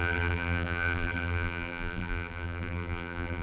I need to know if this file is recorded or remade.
remade